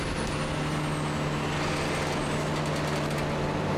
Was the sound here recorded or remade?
recorded